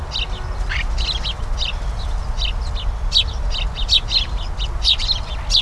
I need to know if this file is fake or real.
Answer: real